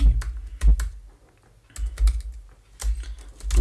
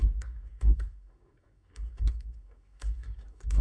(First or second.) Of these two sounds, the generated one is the second